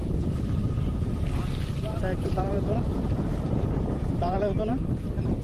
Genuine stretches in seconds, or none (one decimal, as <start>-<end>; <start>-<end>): 0.8-2.1